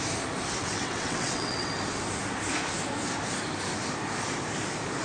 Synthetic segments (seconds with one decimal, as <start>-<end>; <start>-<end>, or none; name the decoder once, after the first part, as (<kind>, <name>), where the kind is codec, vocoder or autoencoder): 0.6-1.7 (vocoder, WaveNeXt)